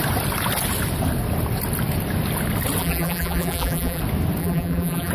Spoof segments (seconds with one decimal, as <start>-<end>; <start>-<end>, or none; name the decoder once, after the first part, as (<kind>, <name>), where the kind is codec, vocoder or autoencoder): 2.8-4.0 (vocoder, BigVGAN v2); 4.4-5.1